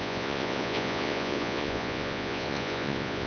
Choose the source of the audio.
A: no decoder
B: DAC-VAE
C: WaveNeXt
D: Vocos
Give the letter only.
D